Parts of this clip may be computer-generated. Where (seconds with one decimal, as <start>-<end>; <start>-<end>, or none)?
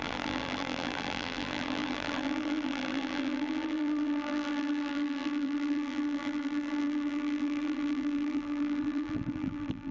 0.0-9.9